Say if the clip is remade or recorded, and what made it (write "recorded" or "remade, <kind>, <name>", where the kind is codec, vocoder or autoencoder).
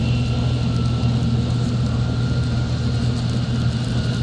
recorded